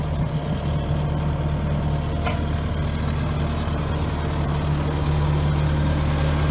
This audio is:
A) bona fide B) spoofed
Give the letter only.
A